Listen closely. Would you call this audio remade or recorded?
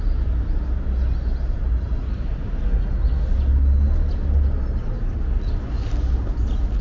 recorded